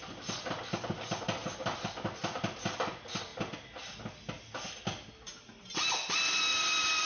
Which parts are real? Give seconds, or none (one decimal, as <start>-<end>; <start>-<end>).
0.0-7.1